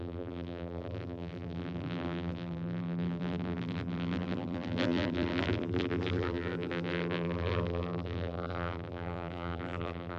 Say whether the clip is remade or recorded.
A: remade